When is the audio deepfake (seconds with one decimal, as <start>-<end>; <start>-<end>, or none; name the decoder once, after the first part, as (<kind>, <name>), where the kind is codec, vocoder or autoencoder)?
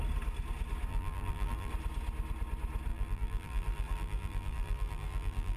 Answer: 0.9-1.7 (vocoder, BigVGAN v2); 2.9-5.6